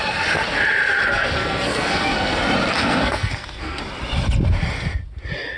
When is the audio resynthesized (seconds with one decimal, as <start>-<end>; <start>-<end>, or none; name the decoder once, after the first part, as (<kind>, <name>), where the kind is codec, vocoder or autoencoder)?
1.1-2.4 (codec, SNAC); 2.8-3.8